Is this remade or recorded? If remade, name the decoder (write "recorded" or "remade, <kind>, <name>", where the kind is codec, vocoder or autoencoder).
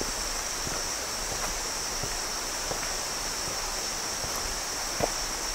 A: recorded